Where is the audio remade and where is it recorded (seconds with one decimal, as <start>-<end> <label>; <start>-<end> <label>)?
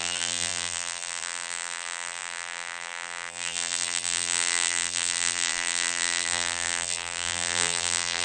0.0-8.2 remade